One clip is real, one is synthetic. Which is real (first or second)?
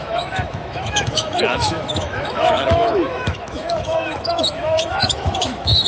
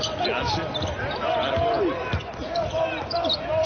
second